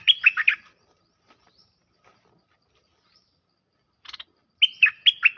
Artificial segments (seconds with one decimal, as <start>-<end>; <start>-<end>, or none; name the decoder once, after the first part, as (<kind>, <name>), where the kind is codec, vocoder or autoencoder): none